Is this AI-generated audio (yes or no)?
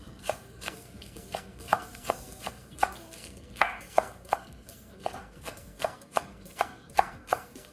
yes